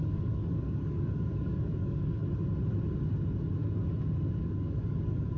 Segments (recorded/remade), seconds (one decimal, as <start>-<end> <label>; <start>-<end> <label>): 0.0-2.2 remade; 2.2-4.3 recorded; 4.3-5.4 remade